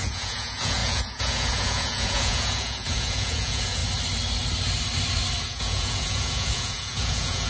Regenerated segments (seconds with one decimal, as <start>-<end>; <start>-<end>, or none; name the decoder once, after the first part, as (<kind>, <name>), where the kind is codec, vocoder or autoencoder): 0.0-3.8 (vocoder, Vocos); 5.4-7.5